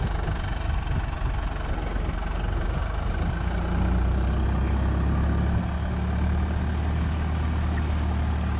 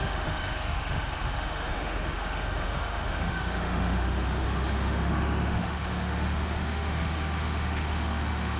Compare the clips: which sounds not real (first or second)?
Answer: second